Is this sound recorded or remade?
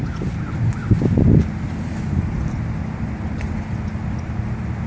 recorded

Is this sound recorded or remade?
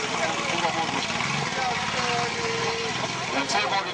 recorded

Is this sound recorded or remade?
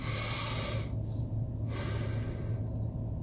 recorded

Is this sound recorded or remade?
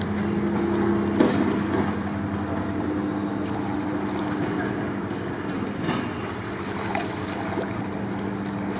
recorded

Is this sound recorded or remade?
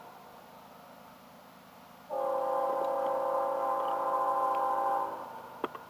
recorded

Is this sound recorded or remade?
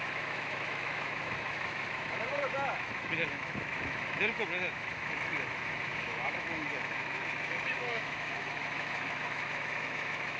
remade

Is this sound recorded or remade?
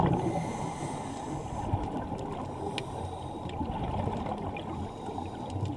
recorded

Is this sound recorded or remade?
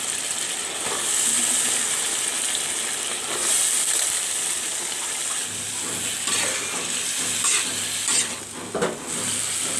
recorded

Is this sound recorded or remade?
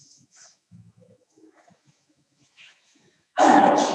remade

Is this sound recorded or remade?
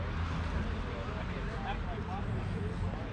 recorded